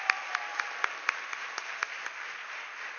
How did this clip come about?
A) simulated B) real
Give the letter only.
B